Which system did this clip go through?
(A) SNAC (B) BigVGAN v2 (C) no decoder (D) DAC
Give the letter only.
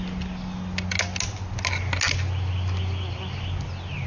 C